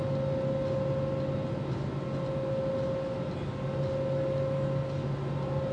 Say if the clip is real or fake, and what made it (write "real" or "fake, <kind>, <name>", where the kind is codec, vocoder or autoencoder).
real